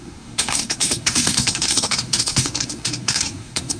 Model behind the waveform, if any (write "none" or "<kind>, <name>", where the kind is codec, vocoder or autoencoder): codec, SNAC